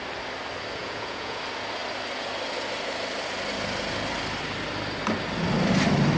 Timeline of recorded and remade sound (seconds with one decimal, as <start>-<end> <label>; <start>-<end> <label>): 0.0-0.8 recorded; 0.8-1.4 remade; 1.4-6.2 recorded